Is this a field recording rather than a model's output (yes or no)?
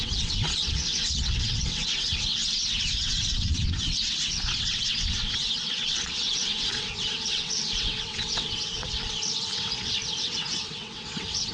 no